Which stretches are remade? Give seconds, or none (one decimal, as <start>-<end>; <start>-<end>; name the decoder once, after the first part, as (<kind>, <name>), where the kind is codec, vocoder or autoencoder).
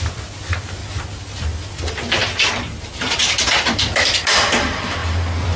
0.0-0.8 (vocoder, BigVGAN v2); 1.8-2.2; 2.8-5.6